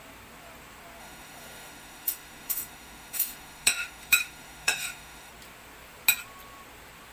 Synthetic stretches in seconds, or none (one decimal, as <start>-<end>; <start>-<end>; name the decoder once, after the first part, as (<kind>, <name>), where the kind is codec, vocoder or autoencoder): 1.0-5.3 (autoencoder, DAC-VAE)